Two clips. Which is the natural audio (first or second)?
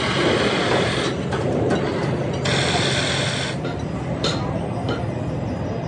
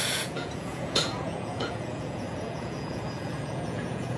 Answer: first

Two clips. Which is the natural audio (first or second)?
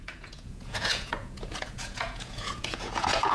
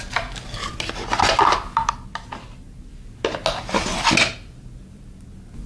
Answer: second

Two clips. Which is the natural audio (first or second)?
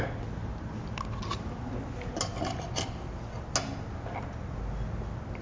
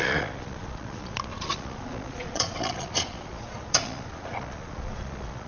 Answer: first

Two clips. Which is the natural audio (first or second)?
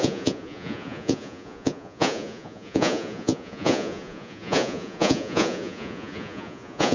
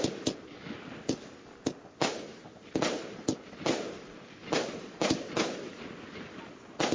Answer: second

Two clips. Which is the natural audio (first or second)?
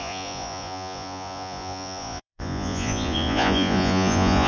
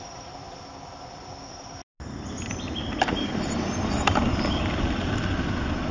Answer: second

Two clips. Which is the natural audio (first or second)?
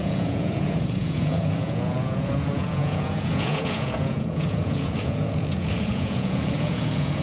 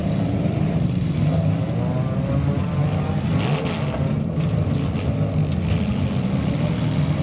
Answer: second